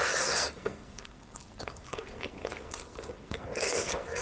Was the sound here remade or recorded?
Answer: remade